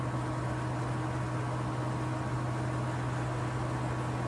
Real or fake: real